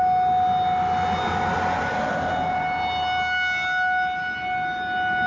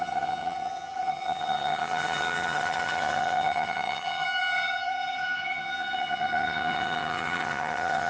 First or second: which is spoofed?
second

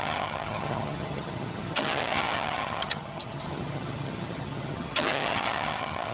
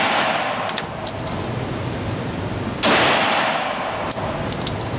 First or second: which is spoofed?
first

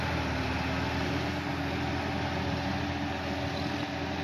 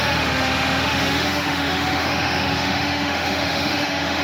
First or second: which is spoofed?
second